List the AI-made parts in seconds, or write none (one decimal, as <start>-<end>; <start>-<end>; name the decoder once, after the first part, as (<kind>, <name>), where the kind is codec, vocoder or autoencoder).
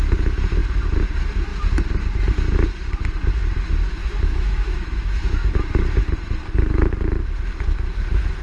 4.0-5.7 (autoencoder, DAC-VAE)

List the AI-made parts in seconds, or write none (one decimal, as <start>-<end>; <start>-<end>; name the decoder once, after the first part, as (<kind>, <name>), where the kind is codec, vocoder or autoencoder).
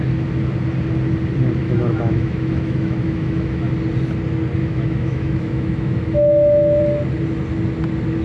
1.6-3.7 (autoencoder, DAC-VAE); 4.6-6.8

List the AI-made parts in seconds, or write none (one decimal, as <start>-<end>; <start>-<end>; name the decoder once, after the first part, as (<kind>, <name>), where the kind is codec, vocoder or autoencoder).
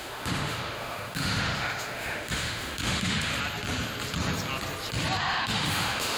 0.0-3.3 (autoencoder, DAC-VAE); 5.2-6.2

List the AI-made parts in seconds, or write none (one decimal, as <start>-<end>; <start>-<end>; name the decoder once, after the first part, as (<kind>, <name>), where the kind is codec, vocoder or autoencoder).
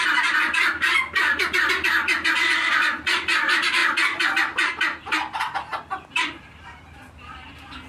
none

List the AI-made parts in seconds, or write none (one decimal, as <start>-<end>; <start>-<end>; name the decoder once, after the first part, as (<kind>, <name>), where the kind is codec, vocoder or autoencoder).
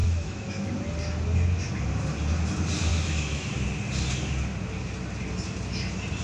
0.0-0.7 (autoencoder, DAC-VAE); 2.9-3.5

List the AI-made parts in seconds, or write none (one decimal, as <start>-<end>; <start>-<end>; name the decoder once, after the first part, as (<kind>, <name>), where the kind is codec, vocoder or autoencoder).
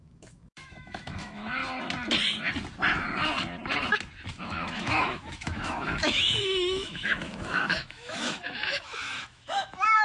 0.0-1.6 (autoencoder, DAC-VAE); 4.3-10.0